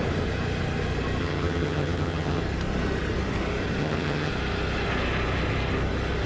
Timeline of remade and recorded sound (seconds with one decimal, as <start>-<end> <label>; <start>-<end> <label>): 0.0-1.2 recorded; 1.2-2.4 remade; 2.4-3.8 recorded; 3.8-4.3 remade; 4.3-6.3 recorded